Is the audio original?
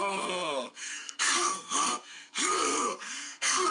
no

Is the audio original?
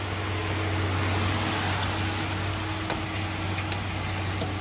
yes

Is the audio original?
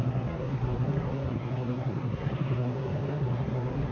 no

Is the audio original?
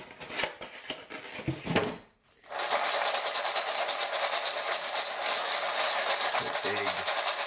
yes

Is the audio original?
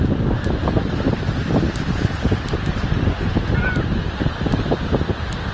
yes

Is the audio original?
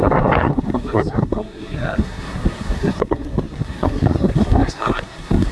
no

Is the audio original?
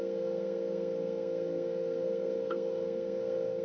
no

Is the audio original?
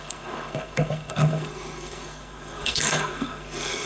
no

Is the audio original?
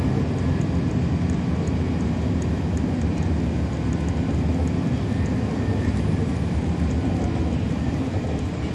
yes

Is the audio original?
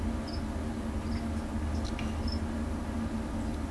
yes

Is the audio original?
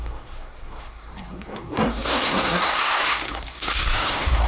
no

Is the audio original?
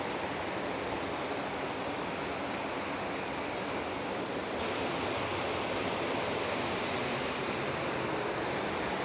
yes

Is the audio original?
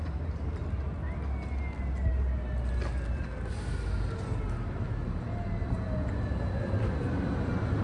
yes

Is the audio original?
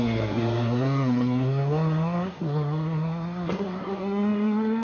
no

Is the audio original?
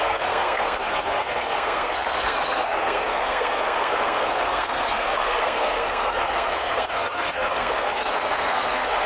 no